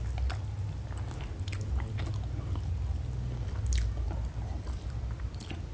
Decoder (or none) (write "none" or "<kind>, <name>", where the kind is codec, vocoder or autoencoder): none